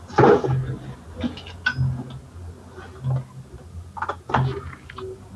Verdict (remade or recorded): recorded